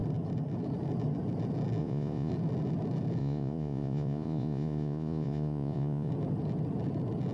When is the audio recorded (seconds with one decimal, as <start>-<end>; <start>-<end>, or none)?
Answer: 0.0-1.8; 2.3-3.2; 6.1-7.3